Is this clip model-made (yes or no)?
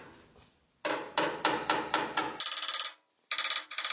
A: no